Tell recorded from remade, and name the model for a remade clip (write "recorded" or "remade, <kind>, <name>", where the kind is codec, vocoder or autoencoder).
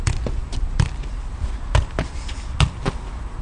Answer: recorded